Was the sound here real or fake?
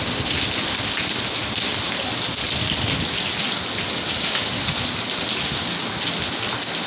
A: real